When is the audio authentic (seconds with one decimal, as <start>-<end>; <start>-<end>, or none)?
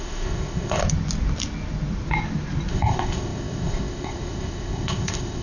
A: 0.8-2.7